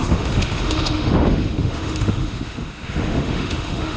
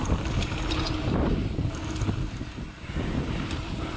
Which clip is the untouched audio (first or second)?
second